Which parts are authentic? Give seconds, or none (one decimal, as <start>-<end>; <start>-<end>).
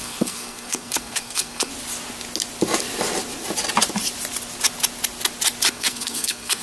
1.7-5.7